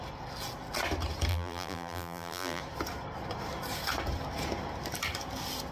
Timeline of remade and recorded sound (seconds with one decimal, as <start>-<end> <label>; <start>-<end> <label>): 0.0-1.3 recorded; 1.3-2.6 remade; 2.6-5.7 recorded